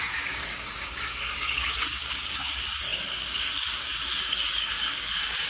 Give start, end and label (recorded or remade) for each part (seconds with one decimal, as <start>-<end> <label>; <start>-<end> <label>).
0.0-5.5 remade